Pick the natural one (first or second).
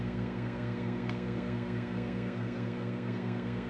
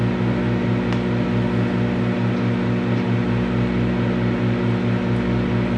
second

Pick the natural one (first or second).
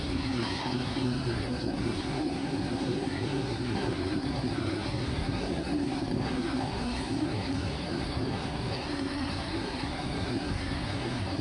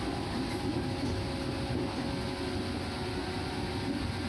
second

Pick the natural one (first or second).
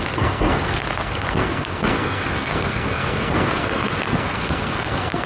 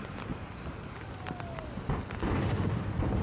second